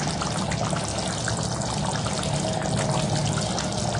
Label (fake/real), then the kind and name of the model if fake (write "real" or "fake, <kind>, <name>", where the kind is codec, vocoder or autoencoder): real